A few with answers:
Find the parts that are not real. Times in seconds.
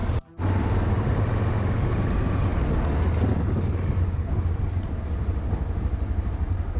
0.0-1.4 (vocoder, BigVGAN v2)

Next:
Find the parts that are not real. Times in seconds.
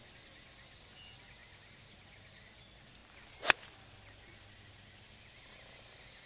none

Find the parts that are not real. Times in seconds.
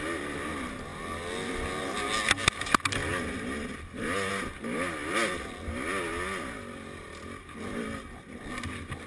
none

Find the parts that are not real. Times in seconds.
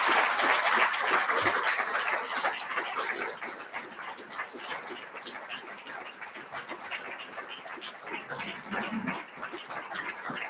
none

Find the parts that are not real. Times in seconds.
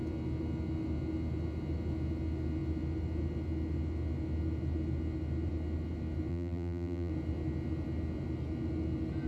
6.3-7.1 (vocoder, BigVGAN v2)